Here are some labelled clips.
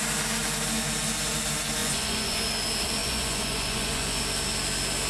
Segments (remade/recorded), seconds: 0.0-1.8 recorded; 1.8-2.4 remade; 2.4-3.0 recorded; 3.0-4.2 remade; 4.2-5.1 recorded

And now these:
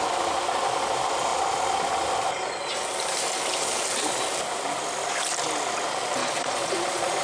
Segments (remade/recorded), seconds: 0.0-6.2 recorded; 6.2-7.2 remade

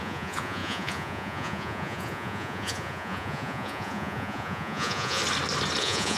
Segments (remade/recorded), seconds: 0.0-5.2 remade; 5.2-5.8 recorded; 5.8-6.2 remade

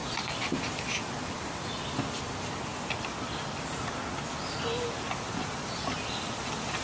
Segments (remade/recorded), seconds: 0.0-6.8 recorded

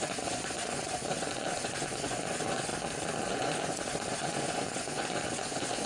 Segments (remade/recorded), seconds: 0.0-2.7 remade; 2.7-3.3 recorded; 3.3-5.9 remade

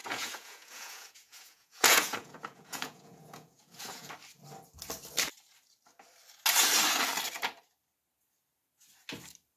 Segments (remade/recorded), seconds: 0.0-4.1 remade; 4.1-9.6 recorded

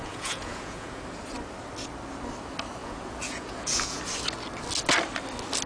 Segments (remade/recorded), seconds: 0.0-1.0 remade; 1.0-2.8 recorded; 2.8-4.0 remade; 4.0-5.7 recorded

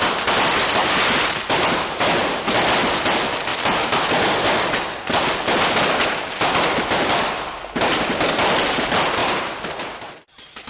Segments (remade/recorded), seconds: 0.0-10.7 recorded